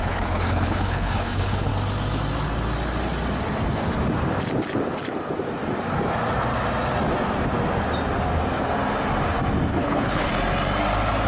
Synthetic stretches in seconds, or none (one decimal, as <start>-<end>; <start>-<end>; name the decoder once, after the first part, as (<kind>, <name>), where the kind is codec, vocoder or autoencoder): 0.0-1.7 (codec, HILCodec); 9.7-10.3